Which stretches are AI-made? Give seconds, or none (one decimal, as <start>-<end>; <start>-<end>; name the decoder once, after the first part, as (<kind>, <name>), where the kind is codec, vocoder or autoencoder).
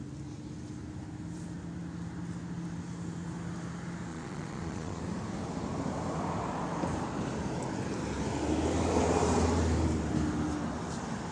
4.1-5.0 (vocoder, Vocos)